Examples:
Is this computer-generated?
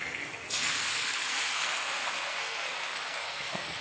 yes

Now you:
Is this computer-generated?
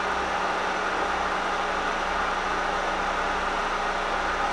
no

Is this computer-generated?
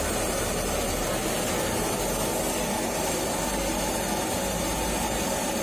no